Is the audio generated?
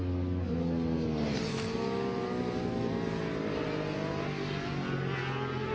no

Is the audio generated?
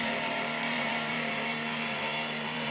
yes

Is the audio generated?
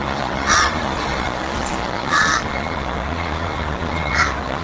yes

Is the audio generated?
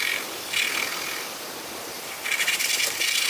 no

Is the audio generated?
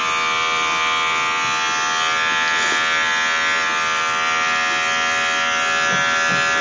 no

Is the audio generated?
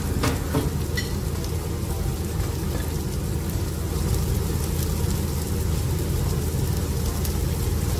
no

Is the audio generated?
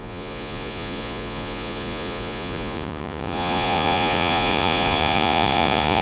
yes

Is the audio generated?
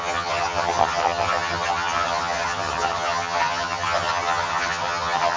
yes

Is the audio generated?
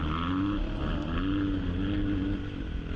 no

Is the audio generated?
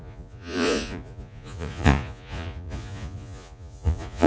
yes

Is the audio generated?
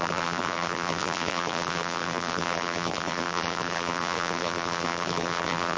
yes